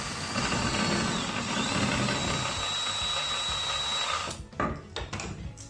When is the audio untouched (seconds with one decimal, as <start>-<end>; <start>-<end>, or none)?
0.0-5.7